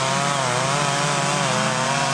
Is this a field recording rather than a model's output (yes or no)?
yes